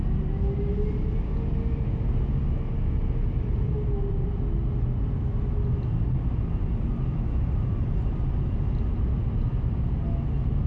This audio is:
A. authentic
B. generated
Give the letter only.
A